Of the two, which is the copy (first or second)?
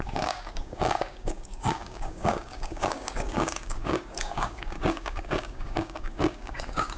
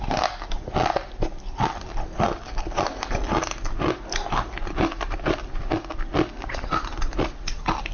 first